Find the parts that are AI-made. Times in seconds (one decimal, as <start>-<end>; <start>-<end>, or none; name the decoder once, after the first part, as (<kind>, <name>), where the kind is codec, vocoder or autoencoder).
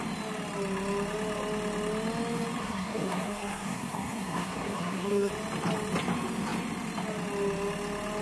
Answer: 2.6-5.3 (codec, SNAC)